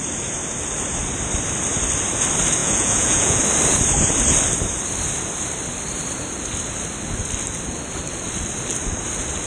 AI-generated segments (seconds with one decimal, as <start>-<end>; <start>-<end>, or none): 2.6-3.4